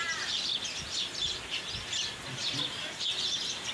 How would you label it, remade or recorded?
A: recorded